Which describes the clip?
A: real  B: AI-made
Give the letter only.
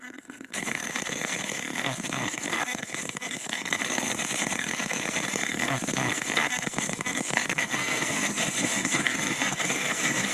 B